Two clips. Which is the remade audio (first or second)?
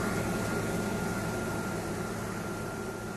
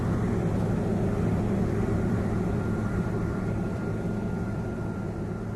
second